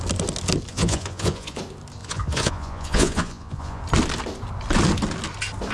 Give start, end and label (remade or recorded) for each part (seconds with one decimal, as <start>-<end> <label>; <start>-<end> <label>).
0.0-0.7 recorded; 0.7-1.6 remade; 1.6-2.0 recorded; 2.0-3.8 remade; 3.8-5.7 recorded